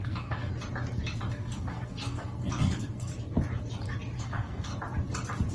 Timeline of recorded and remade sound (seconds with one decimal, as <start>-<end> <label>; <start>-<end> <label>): 0.0-0.5 remade; 0.5-1.3 recorded; 1.3-3.1 remade; 3.1-4.2 recorded; 4.2-4.7 remade; 4.7-5.5 recorded